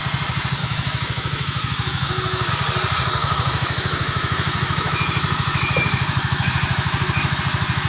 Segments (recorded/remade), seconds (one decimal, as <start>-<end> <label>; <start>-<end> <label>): 0.0-0.6 recorded; 0.6-2.5 remade; 2.5-3.2 recorded; 3.2-7.4 remade; 7.4-7.9 recorded